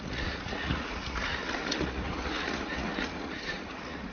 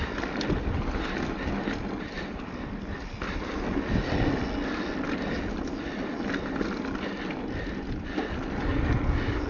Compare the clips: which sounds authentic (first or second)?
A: second